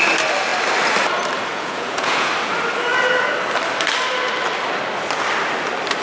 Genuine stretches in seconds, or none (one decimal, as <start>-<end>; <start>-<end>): 0.0-1.5; 2.3-6.0